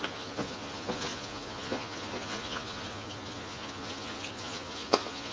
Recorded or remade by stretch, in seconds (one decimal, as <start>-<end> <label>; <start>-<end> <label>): 0.0-5.3 remade